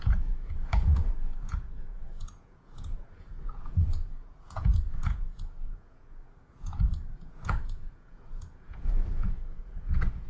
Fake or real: fake